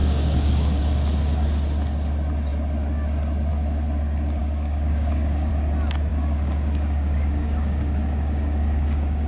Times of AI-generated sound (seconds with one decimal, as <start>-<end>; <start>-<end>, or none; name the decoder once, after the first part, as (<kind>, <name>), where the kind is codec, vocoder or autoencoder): 0.0-0.8 (codec, DAC); 4.4-5.5; 6.1-9.3